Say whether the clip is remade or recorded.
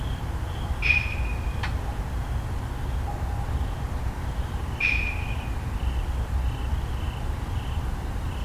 recorded